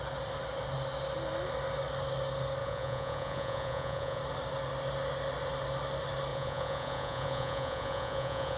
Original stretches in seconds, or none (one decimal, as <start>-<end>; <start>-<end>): 0.0-2.6; 4.2-6.3